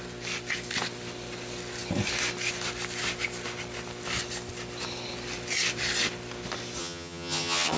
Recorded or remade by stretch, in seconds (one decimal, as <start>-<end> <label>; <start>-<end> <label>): 0.0-6.8 recorded; 6.8-7.8 remade